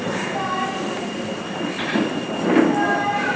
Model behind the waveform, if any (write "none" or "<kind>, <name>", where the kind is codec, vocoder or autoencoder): none